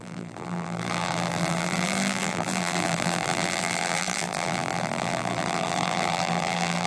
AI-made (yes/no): yes